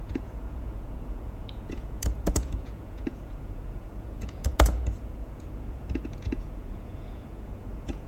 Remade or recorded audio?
remade